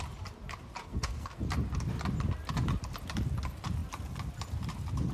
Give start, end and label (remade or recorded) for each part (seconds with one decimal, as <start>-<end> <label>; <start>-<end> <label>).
0.0-0.8 recorded; 0.8-1.4 remade; 1.4-5.1 recorded